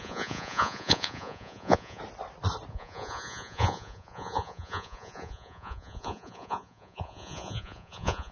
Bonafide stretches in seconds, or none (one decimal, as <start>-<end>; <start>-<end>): 2.0-2.7